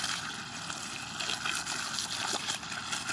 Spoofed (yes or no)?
no